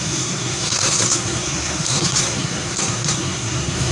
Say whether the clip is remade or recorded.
remade